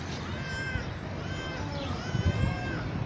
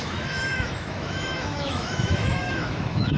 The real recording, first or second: first